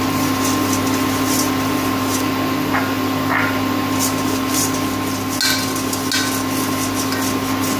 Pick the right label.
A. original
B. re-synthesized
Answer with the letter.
A